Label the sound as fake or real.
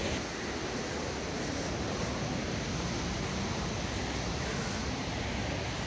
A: real